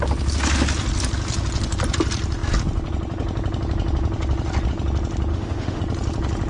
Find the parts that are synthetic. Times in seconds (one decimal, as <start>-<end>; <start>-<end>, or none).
5.3-5.8